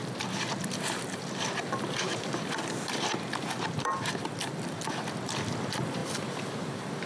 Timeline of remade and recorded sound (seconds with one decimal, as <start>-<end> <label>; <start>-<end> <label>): 0.0-7.1 recorded